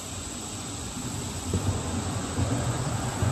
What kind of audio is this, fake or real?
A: fake